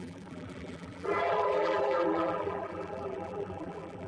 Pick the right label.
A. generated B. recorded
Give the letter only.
A